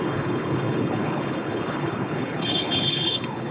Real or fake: fake